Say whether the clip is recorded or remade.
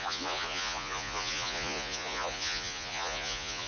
remade